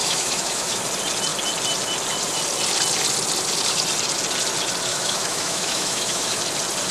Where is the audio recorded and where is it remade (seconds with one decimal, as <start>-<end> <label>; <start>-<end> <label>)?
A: 0.0-0.8 remade; 0.8-4.9 recorded; 4.9-6.4 remade; 6.4-6.9 recorded